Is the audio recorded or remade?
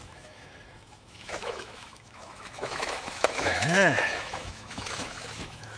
remade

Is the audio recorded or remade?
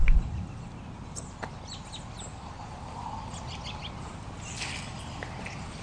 recorded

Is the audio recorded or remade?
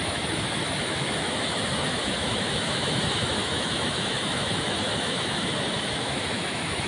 remade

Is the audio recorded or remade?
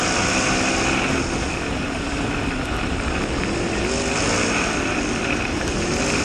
recorded